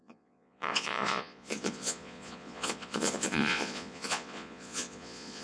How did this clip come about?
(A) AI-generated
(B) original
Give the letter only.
A